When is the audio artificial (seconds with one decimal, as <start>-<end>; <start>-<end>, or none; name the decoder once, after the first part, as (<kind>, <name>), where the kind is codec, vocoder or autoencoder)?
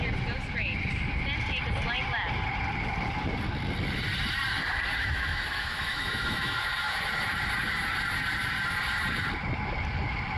4.9-7.0 (autoencoder, DAC-VAE)